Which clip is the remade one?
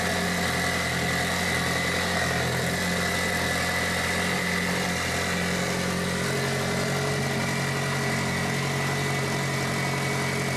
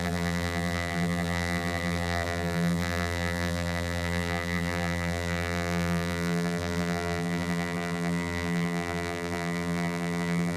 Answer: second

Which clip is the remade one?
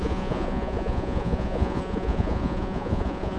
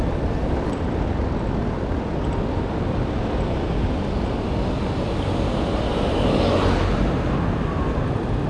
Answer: first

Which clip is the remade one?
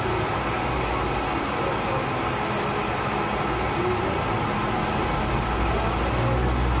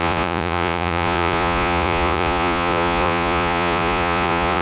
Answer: second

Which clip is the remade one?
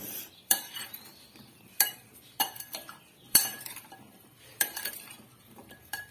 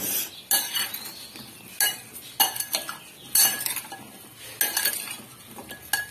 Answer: first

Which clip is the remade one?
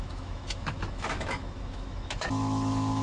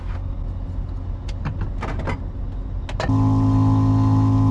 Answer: first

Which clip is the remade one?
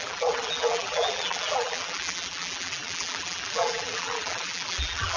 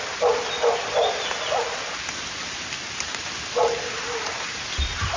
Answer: first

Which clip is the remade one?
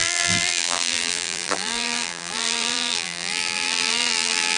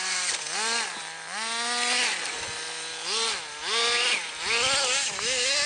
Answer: first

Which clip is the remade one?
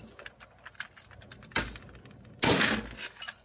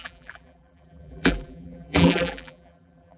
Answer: second